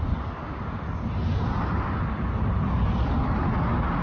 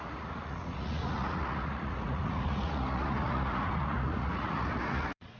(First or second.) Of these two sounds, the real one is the first